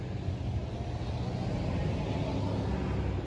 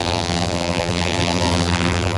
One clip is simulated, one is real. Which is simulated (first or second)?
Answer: second